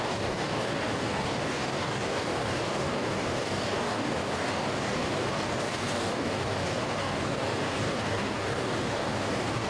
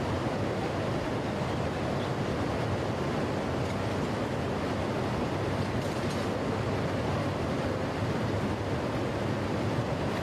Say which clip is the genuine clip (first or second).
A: second